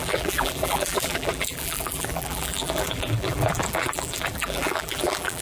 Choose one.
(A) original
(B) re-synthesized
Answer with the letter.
B